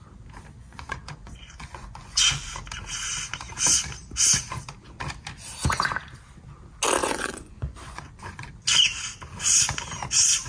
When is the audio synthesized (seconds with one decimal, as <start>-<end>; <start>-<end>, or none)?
0.6-2.5; 7.0-8.5